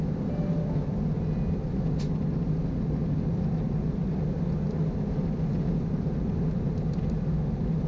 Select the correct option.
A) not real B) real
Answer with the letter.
B